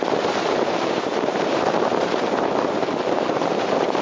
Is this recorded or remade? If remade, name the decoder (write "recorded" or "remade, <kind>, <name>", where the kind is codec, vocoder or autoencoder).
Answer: remade, vocoder, BigVGAN v2